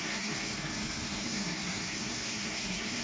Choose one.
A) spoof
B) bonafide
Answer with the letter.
A